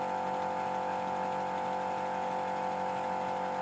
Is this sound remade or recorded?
recorded